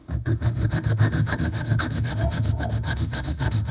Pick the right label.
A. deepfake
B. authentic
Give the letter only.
A